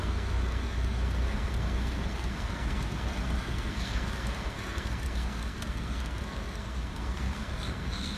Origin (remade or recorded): remade